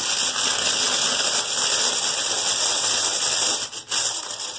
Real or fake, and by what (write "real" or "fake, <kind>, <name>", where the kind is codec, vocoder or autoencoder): real